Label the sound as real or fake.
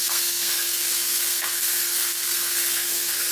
fake